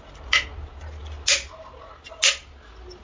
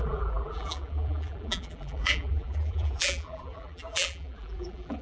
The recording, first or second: first